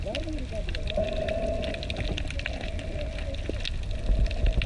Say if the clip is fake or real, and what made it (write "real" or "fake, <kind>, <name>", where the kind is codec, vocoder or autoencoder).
real